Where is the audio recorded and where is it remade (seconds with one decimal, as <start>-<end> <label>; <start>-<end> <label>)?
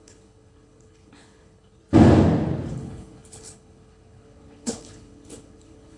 0.0-1.8 remade; 1.8-2.7 recorded; 2.7-6.0 remade